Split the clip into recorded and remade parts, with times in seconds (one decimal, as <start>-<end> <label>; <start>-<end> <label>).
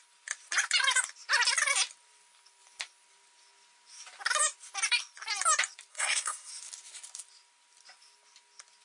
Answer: 0.0-5.9 recorded; 5.9-6.5 remade; 6.5-8.8 recorded